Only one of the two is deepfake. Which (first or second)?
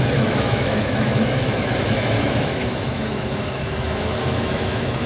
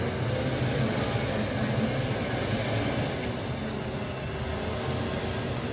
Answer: first